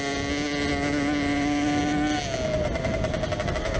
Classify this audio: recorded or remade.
recorded